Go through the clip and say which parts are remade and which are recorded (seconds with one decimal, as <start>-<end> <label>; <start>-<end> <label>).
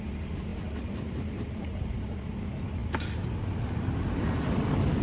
0.0-2.8 remade; 2.8-5.0 recorded